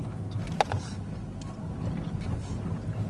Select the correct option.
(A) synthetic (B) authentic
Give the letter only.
B